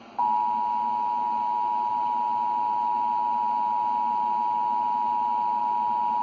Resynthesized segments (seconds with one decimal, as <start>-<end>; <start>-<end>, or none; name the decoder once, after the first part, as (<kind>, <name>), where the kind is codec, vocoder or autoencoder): none

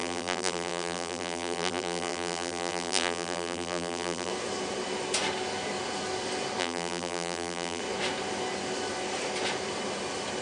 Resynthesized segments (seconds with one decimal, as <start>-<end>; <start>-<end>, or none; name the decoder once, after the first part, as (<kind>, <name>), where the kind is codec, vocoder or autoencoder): 0.0-4.3 (vocoder, BigVGAN v2); 6.6-7.8

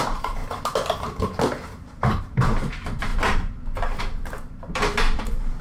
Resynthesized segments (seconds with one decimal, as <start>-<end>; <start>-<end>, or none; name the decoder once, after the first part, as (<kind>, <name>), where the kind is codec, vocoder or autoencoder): 0.0-0.4 (vocoder, BigVGAN v2); 2.2-5.6

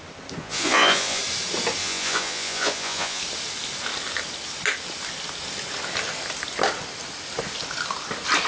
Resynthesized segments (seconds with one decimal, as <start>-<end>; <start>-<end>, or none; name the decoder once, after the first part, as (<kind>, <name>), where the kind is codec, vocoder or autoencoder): 0.4-1.2 (vocoder, Vocos); 1.8-3.2

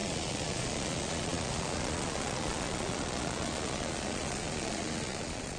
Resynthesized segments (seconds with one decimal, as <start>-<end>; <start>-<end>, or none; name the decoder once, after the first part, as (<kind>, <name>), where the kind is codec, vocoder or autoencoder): 0.0-5.6 (vocoder, Vocos)